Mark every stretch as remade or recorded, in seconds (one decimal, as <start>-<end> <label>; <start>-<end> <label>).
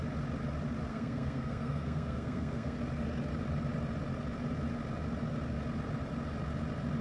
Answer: 0.0-0.9 recorded; 0.9-2.8 remade; 2.8-7.0 recorded